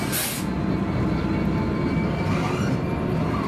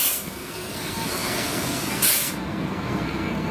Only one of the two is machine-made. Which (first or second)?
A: second